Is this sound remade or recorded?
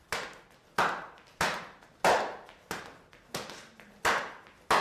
recorded